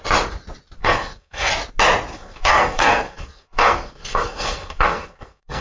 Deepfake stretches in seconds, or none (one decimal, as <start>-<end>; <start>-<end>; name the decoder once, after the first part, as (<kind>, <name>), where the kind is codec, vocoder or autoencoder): 0.8-1.5 (codec, SNAC); 2.1-5.6

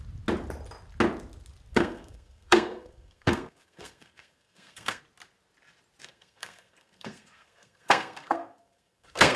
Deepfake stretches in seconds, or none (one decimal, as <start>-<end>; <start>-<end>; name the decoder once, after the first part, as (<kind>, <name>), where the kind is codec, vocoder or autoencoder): 1.7-5.0 (codec, SNAC); 6.0-9.4

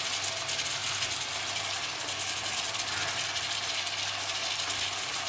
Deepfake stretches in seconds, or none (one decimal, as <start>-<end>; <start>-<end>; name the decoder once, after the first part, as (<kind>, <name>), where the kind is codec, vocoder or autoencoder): none

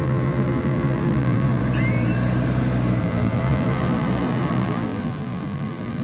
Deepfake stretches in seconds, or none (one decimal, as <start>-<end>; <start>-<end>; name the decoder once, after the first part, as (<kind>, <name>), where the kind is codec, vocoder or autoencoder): 0.0-1.6 (vocoder, BigVGAN v2); 3.0-6.0

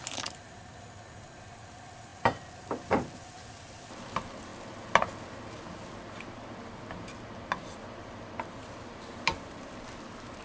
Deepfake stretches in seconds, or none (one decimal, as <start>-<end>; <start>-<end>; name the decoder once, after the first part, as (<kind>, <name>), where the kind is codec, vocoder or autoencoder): 0.0-4.5 (vocoder, BigVGAN v2); 7.6-10.4

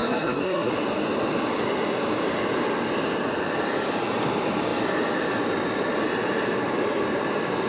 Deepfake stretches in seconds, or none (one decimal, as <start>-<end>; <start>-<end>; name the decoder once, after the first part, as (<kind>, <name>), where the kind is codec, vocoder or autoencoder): 0.0-0.7 (codec, SNAC)

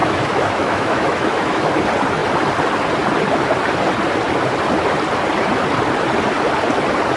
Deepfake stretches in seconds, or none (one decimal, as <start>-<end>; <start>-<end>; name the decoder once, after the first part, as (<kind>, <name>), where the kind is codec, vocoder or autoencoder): 0.0-1.8 (autoencoder, DAC-VAE)